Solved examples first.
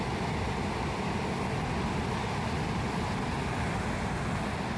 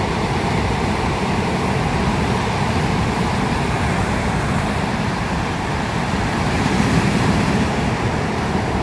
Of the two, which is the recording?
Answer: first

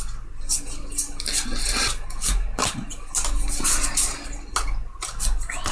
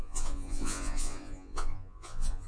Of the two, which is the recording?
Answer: first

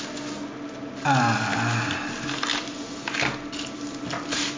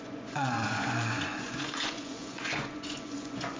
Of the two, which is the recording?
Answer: first